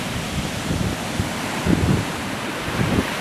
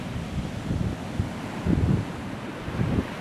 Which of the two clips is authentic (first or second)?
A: second